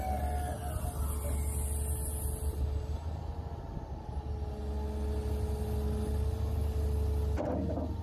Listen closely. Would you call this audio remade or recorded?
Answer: recorded